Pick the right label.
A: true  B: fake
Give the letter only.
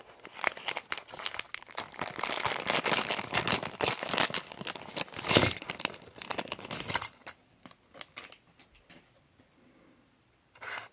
A